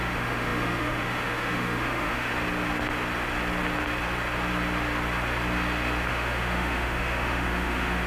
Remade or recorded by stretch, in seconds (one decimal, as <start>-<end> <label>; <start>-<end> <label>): 0.0-2.3 remade; 2.3-6.1 recorded; 6.1-8.1 remade